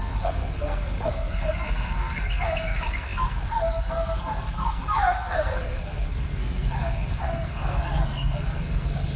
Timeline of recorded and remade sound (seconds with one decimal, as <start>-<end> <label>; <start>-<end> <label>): 0.0-9.2 remade